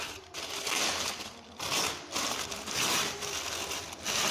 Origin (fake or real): real